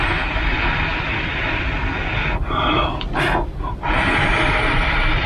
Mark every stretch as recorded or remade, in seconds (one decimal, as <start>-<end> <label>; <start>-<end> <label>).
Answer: 0.0-5.3 recorded